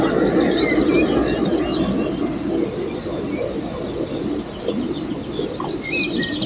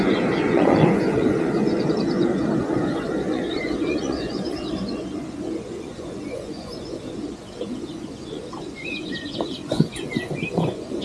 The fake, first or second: second